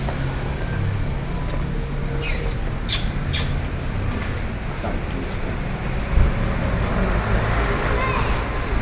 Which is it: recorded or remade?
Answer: recorded